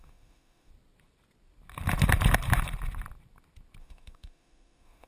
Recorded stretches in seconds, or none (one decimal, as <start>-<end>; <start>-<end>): 0.7-3.8